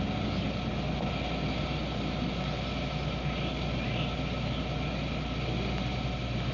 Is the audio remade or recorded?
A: recorded